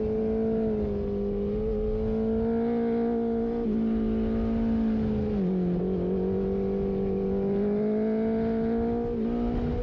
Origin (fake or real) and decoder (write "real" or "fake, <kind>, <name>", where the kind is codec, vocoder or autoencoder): real